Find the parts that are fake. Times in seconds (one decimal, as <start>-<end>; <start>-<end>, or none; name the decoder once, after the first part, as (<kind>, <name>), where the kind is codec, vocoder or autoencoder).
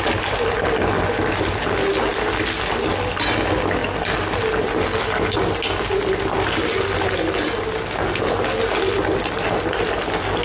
none